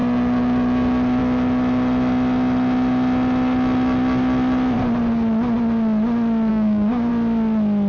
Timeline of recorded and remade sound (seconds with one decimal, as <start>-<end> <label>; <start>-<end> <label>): 0.0-6.5 recorded; 6.5-7.1 remade; 7.1-7.9 recorded